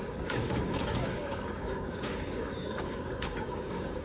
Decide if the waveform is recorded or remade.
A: remade